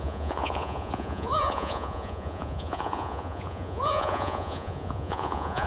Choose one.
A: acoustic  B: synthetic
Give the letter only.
B